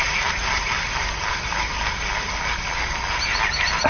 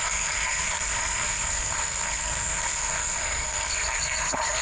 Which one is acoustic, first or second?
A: first